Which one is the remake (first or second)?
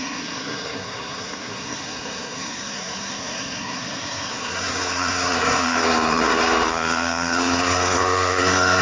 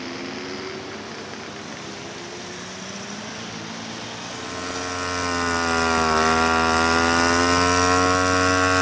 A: first